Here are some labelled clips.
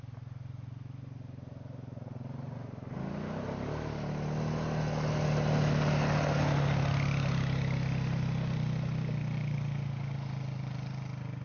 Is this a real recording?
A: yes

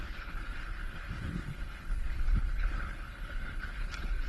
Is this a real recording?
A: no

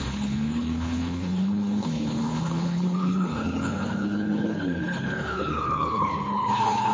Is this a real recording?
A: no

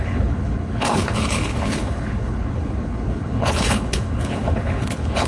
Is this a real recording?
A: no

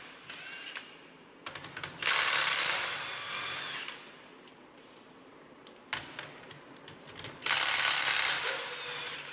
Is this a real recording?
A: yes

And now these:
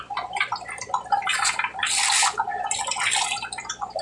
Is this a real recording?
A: yes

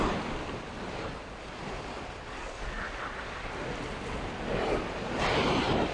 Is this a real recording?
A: yes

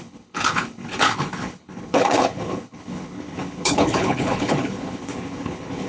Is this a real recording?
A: no